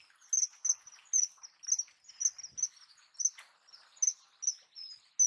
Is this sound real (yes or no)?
yes